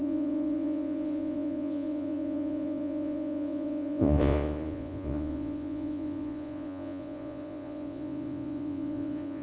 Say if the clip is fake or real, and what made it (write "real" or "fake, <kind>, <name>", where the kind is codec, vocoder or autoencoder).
fake, vocoder, Vocos